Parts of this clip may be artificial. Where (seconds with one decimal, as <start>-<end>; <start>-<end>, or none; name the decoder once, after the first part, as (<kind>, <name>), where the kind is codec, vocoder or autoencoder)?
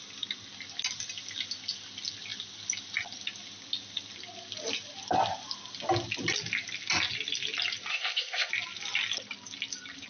7.9-8.5 (codec, ZipCodec)